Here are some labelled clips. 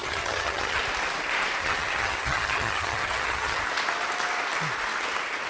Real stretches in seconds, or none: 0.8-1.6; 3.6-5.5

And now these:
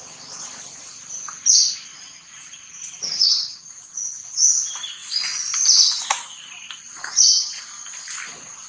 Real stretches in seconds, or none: 0.0-1.9; 3.8-8.7

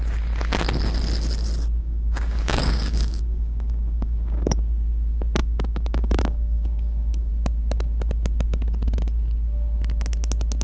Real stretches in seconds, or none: 0.0-1.8; 4.6-5.4; 7.3-10.6

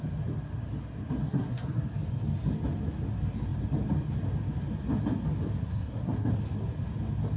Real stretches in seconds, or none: 0.0-1.2; 1.8-5.6; 6.3-7.4

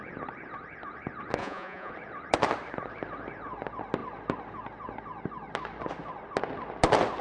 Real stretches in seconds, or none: 0.0-1.4; 1.9-7.2

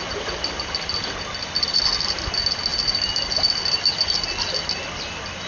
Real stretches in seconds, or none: 0.0-5.5

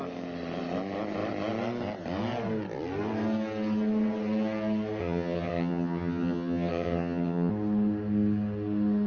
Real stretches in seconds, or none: 0.0-5.0; 7.5-9.1

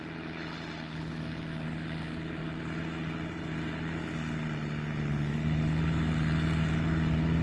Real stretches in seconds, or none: 0.0-7.4